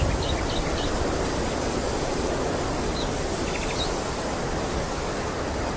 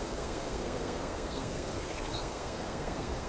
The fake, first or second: second